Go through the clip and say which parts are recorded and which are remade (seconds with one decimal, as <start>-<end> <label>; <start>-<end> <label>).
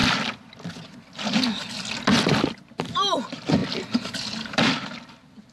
0.0-5.5 recorded